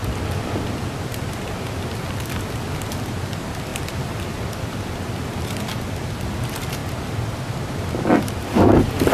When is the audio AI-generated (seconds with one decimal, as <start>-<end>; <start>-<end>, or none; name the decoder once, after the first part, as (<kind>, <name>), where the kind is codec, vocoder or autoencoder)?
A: 1.3-6.8 (vocoder, BigVGAN v2); 8.3-9.1